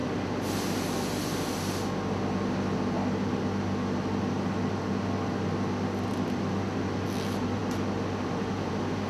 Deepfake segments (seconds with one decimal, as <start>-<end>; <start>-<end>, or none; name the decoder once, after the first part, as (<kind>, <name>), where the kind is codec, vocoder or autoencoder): none